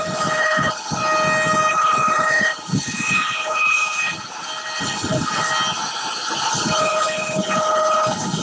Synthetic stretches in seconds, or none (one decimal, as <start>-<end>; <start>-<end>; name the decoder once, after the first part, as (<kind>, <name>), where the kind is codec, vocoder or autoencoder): 0.0-1.0 (codec, HILCodec); 1.7-4.2; 4.8-5.5; 6.5-8.4